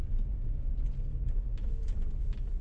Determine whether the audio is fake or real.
real